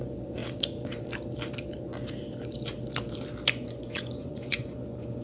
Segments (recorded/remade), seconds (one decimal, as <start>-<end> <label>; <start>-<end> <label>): 0.0-0.4 remade; 0.4-3.5 recorded; 3.5-5.2 remade

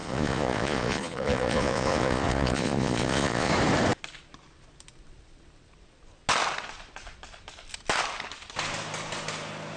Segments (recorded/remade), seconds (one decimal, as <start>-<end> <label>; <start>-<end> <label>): 0.0-3.5 remade; 3.5-9.8 recorded

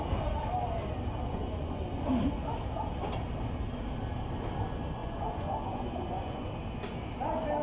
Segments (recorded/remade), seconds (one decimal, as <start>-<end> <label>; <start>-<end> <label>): 0.0-1.3 recorded; 1.3-1.8 remade; 1.8-5.0 recorded; 5.0-6.5 remade; 6.5-7.6 recorded

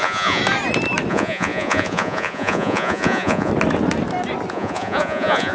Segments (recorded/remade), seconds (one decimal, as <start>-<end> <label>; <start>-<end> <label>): 0.0-0.4 remade; 0.4-1.1 recorded; 1.1-3.5 remade; 3.5-4.5 recorded; 4.5-5.5 remade

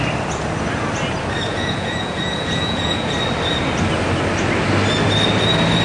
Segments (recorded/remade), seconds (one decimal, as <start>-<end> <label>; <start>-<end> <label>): 0.0-1.5 recorded; 1.5-3.1 remade; 3.1-5.8 recorded

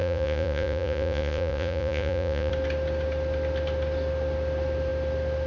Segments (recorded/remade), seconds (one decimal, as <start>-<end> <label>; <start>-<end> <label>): 0.0-2.5 remade; 2.5-5.5 recorded

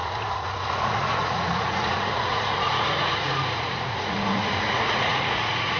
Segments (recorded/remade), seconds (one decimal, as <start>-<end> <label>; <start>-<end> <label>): 0.0-5.8 remade

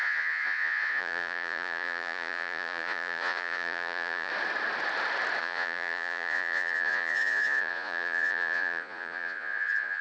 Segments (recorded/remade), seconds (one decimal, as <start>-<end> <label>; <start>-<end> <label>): 0.0-4.3 remade; 4.3-5.4 recorded; 5.4-10.0 remade